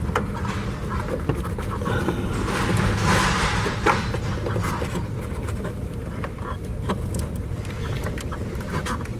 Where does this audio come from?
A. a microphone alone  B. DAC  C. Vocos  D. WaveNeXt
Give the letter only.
A